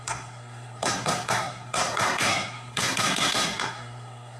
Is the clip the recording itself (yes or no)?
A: no